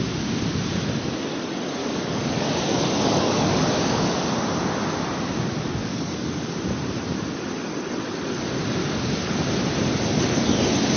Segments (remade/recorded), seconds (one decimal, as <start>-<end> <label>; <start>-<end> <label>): 0.0-1.8 recorded; 1.8-4.1 remade; 4.1-5.8 recorded; 5.8-6.6 remade; 6.6-8.8 recorded; 8.8-9.3 remade; 9.3-11.0 recorded